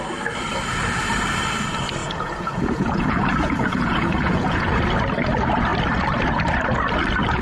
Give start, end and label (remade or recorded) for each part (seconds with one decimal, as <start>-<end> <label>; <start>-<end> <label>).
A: 0.0-2.0 recorded; 2.0-4.8 remade; 4.8-7.4 recorded